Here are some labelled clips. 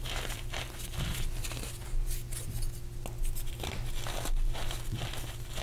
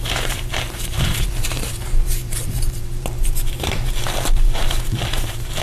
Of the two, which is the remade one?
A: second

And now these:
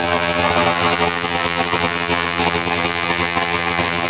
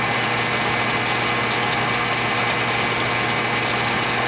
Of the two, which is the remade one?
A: first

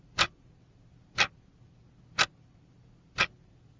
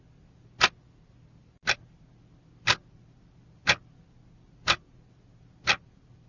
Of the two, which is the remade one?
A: first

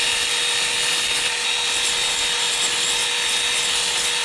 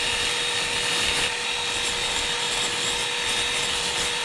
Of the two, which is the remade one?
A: second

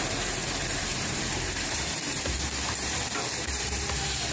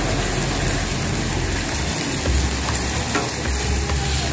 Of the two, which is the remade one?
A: first